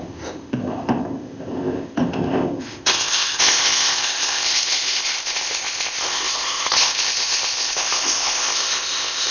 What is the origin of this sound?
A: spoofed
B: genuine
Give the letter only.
A